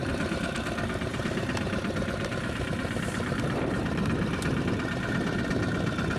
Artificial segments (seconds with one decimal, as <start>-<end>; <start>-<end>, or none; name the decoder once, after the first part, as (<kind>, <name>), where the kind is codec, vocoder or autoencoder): 0.0-6.2 (vocoder, BigVGAN v2)